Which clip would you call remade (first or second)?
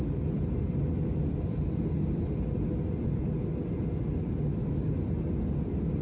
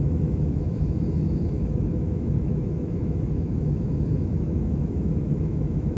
second